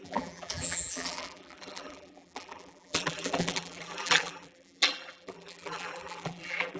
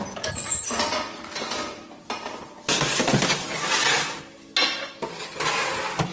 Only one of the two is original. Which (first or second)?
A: second